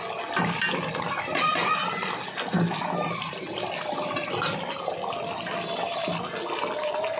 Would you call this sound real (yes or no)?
yes